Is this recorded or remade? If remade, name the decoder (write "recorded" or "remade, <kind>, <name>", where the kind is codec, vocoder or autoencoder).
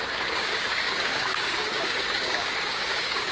remade, codec, DAC